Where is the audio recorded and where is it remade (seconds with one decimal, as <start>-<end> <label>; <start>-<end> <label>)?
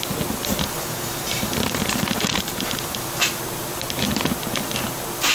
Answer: 0.0-0.5 recorded; 0.5-3.4 remade; 3.4-5.3 recorded